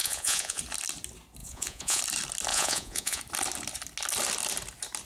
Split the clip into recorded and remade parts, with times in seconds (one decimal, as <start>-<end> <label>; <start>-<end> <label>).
0.0-0.6 remade; 0.6-1.4 recorded; 1.4-2.0 remade; 2.0-2.5 recorded; 2.5-3.2 remade; 3.2-5.1 recorded